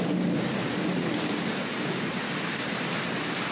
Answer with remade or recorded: recorded